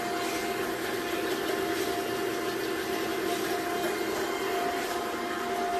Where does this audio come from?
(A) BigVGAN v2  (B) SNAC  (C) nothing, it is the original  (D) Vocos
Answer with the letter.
C